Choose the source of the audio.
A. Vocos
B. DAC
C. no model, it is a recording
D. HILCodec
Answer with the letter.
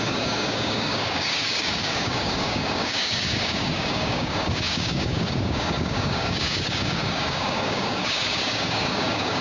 B